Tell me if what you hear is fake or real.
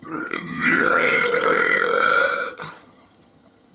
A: fake